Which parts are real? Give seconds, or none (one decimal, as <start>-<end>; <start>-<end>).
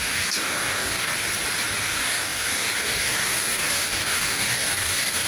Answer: 1.1-1.8